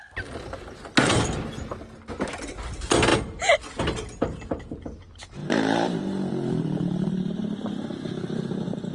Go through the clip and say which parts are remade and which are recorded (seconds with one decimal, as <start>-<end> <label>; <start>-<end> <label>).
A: 0.0-5.4 recorded; 5.4-8.9 remade